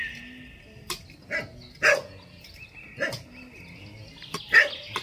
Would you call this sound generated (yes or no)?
no